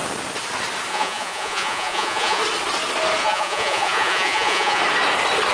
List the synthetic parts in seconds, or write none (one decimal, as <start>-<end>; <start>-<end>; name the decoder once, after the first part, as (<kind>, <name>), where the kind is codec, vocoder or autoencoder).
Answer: 0.9-2.4 (vocoder, Vocos); 3.2-4.8